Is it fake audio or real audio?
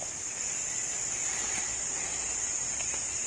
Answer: real